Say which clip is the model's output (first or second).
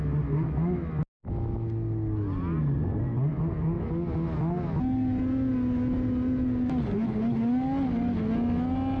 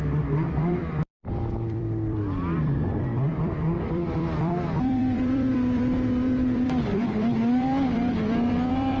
second